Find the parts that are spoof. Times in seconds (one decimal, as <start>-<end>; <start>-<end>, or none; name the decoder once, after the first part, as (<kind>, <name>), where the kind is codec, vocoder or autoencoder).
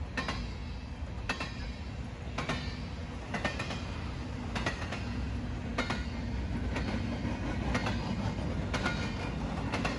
none